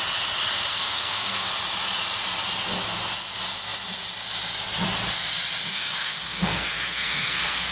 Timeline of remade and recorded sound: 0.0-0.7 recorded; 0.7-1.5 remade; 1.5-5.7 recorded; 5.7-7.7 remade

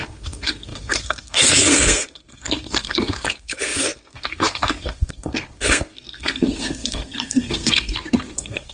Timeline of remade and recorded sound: 0.0-8.7 remade

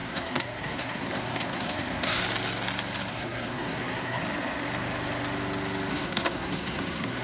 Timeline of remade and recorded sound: 0.0-2.2 remade; 2.2-3.1 recorded; 3.1-4.2 remade; 4.2-5.9 recorded; 5.9-7.2 remade